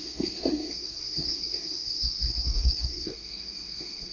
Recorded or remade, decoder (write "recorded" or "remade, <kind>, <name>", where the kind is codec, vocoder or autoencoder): remade, codec, SNAC